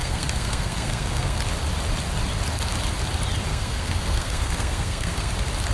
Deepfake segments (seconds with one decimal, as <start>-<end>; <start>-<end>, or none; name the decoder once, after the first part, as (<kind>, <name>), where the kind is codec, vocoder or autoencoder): 0.0-1.4 (codec, SNAC); 3.5-5.3